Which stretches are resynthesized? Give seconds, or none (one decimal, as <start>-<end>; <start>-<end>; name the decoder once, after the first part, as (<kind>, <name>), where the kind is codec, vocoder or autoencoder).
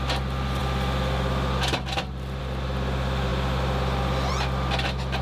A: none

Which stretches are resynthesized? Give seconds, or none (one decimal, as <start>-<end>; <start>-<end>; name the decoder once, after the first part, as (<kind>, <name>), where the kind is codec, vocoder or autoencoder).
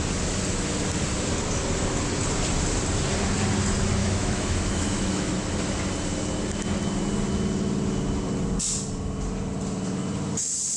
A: 4.0-5.3 (autoencoder, DAC-VAE)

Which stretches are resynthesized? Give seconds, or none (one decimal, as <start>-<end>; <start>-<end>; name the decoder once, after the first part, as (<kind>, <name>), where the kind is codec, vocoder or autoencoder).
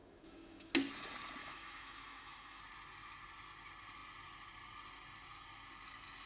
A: 0.0-0.7 (autoencoder, DAC-VAE); 1.4-2.6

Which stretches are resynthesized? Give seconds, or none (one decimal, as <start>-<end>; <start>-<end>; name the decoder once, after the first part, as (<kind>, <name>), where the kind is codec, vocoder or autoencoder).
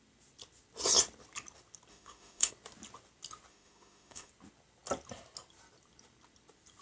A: 1.9-2.5 (autoencoder, DAC-VAE); 3.5-4.3